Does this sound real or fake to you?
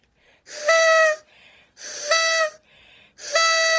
real